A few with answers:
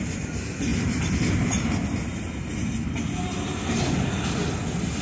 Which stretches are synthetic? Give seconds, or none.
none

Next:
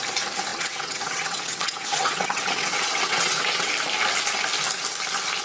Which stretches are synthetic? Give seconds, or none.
0.5-3.7 (vocoder, WaveNeXt)